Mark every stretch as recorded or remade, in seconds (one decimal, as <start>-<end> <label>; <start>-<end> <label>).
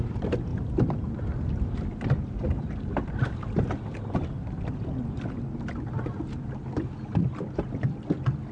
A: 0.0-8.5 recorded